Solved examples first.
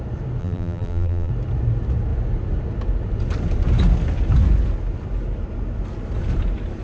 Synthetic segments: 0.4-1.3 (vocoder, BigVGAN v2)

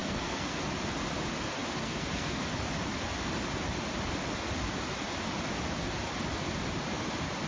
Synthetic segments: 0.0-0.6 (codec, SNAC); 1.8-2.4